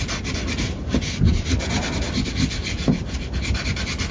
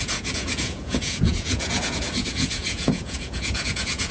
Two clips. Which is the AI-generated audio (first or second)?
second